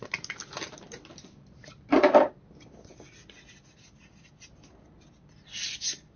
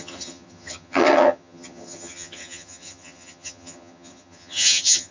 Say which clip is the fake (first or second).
second